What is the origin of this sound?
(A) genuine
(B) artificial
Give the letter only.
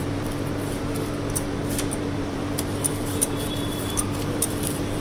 B